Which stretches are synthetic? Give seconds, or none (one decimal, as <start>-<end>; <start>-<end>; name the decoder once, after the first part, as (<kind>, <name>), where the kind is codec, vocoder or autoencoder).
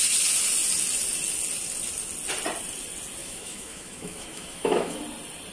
3.2-5.0 (autoencoder, DAC-VAE)